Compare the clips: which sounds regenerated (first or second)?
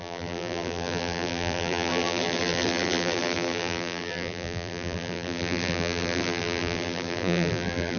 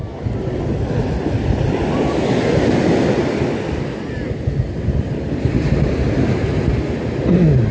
first